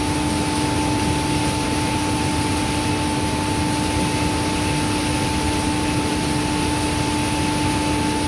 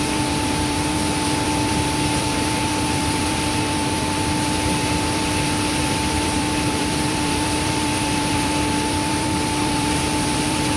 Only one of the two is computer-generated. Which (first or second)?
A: second